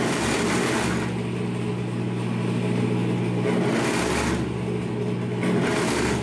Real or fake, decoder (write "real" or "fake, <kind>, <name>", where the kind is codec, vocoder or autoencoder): real